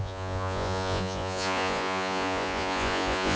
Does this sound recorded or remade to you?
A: remade